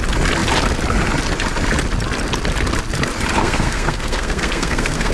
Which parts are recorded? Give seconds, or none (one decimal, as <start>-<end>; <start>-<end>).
0.0-3.4